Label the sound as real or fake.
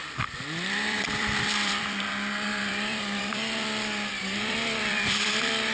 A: fake